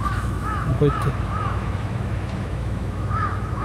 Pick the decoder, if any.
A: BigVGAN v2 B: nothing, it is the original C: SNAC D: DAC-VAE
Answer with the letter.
D